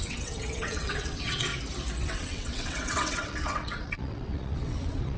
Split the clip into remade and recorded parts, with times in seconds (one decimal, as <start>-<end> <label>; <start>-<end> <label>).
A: 0.0-1.5 remade; 1.5-2.0 recorded; 2.0-5.2 remade